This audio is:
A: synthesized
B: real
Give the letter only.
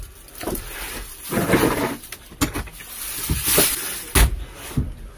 B